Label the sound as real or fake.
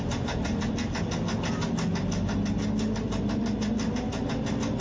real